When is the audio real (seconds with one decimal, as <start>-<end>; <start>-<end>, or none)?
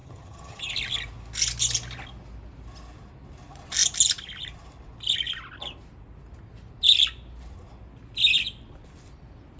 0.7-9.6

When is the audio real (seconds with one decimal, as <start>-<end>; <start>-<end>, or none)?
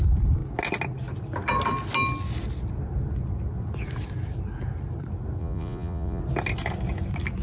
0.0-5.4; 6.2-7.4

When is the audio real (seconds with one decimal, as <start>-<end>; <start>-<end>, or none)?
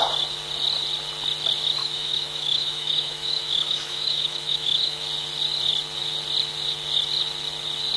0.0-1.8; 5.0-8.0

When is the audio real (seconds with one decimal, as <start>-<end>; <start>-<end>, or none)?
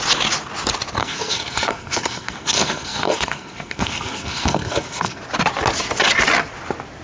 0.0-1.0; 5.2-7.0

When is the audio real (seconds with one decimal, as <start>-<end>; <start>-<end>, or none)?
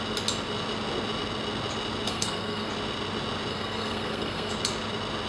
0.0-2.1; 2.7-3.5; 4.5-5.3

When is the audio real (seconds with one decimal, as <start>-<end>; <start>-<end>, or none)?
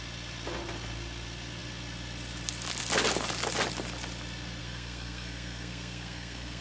0.0-4.6